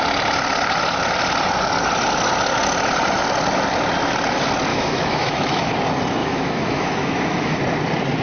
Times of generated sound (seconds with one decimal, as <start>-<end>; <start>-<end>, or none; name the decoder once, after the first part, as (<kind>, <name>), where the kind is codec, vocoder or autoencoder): 4.7-5.7 (autoencoder, DAC-VAE); 6.2-7.6